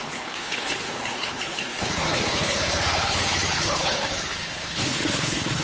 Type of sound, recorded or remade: remade